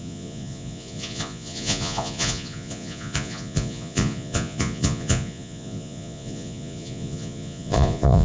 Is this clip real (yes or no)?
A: no